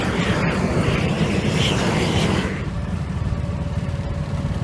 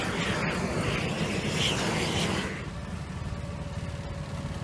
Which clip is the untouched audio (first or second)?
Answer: second